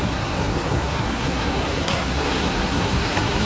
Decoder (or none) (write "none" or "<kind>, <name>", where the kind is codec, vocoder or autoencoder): codec, SNAC